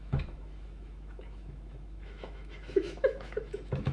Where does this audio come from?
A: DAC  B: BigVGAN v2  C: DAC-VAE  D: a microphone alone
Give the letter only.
C